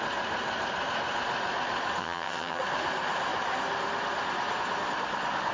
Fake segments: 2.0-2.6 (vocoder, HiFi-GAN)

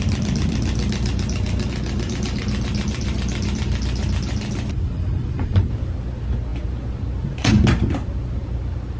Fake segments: 0.0-9.0 (vocoder, BigVGAN v2)

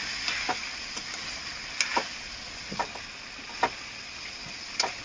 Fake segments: none

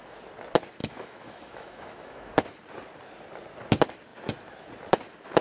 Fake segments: 0.8-2.3 (autoencoder, DAC-VAE)

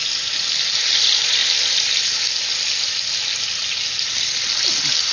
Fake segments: none

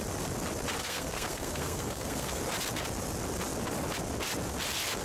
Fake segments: 0.8-2.4 (codec, SNAC)

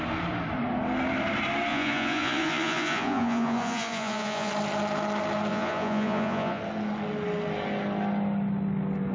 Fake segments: 1.7-4.5 (vocoder, Vocos); 5.5-6.6